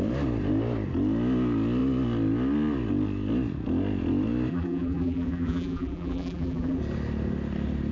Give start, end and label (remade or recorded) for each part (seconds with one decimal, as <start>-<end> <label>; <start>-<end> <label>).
0.0-4.5 recorded; 4.5-6.8 remade; 6.8-7.9 recorded